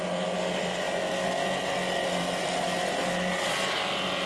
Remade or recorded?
recorded